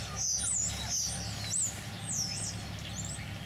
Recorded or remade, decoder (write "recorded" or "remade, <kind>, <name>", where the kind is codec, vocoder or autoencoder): recorded